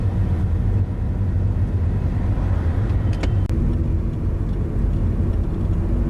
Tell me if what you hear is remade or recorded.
recorded